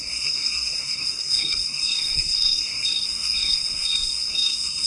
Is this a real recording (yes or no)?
no